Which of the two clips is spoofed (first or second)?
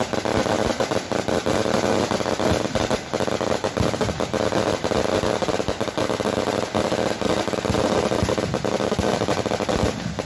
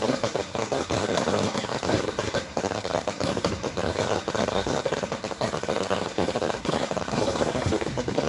second